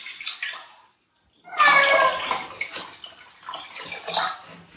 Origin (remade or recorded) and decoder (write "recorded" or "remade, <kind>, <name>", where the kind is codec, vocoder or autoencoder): recorded